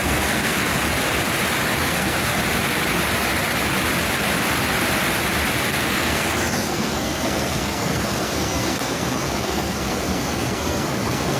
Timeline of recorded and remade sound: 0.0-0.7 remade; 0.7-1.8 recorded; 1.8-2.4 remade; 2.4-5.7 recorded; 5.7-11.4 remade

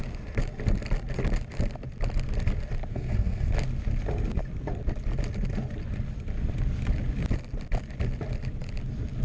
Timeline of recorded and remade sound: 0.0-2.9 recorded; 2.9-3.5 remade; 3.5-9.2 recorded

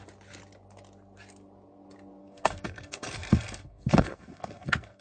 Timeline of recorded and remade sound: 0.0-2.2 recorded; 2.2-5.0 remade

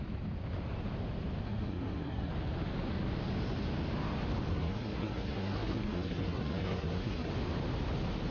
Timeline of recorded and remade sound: 0.0-1.4 recorded; 1.4-2.3 remade; 2.3-4.5 recorded; 4.5-7.3 remade; 7.3-8.3 recorded

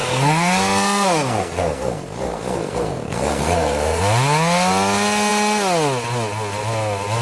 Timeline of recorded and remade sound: 0.0-4.0 remade; 4.0-7.2 recorded

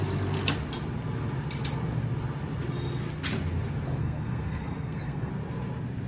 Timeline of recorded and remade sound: 0.0-4.0 recorded; 4.0-5.3 remade; 5.3-6.1 recorded

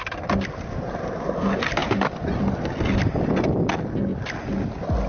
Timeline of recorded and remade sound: 0.0-5.1 recorded